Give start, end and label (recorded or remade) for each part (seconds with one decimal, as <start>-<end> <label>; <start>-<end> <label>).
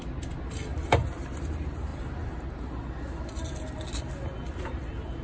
0.0-5.2 recorded